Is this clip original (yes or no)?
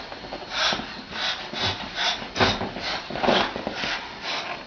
yes